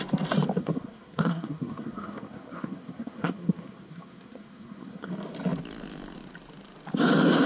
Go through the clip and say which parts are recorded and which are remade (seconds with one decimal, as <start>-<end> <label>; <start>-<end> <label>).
0.0-0.6 recorded; 0.6-5.1 remade; 5.1-7.5 recorded